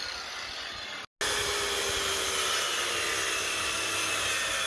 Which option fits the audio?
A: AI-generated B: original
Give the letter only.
B